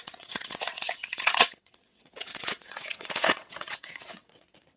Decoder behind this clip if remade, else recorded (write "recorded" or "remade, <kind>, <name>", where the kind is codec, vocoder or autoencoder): remade, vocoder, WaveNeXt